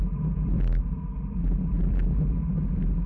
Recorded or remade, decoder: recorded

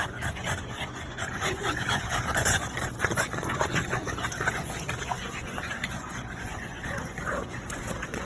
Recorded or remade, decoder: remade, vocoder, Vocos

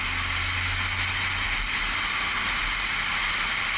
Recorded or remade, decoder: recorded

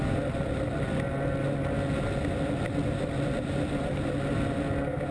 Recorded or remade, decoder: recorded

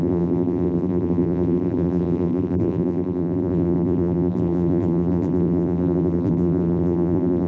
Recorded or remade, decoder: remade, vocoder, BigVGAN v2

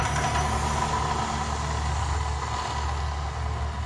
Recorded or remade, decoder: recorded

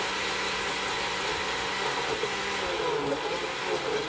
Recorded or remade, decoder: recorded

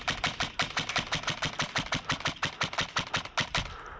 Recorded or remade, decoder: recorded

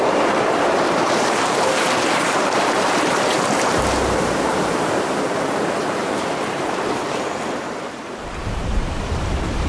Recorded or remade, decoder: remade, vocoder, BigVGAN v2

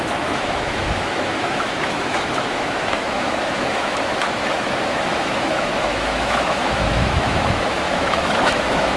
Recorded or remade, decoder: remade, autoencoder, DAC-VAE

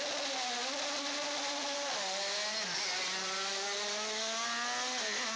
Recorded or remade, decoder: recorded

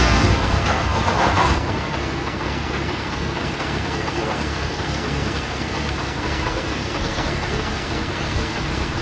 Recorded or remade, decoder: remade, codec, SNAC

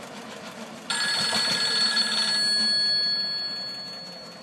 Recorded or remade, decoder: recorded